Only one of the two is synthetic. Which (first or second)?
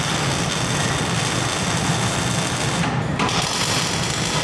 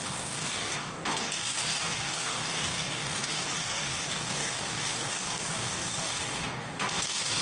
second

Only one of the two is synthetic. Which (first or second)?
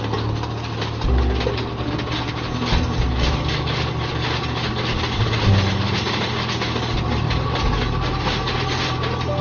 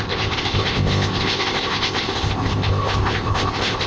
second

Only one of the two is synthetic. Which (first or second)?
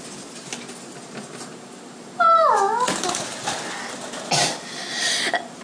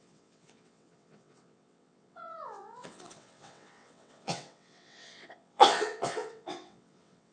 second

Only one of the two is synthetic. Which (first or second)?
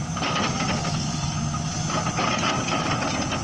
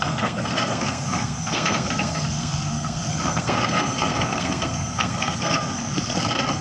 second